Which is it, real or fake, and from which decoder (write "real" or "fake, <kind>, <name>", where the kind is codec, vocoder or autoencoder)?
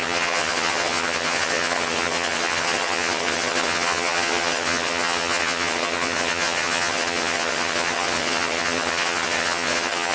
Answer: fake, vocoder, HiFi-GAN